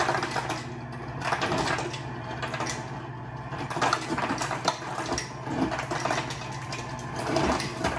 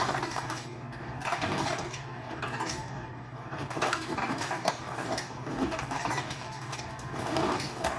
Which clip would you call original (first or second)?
first